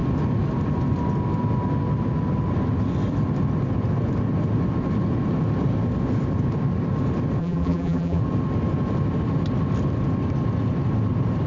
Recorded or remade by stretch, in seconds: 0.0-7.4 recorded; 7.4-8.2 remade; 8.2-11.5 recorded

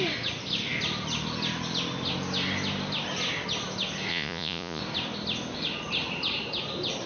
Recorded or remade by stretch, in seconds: 0.0-4.1 recorded; 4.1-4.8 remade; 4.8-7.1 recorded

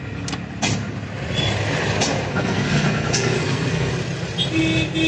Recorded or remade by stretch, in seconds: 0.0-2.3 recorded; 2.3-3.9 remade; 3.9-5.1 recorded

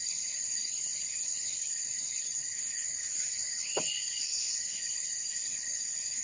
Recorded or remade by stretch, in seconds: 0.0-6.2 remade